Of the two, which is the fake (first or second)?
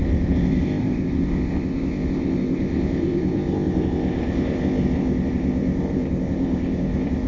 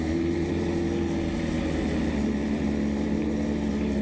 first